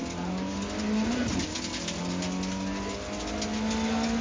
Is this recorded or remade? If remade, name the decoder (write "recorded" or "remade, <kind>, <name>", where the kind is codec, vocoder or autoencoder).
recorded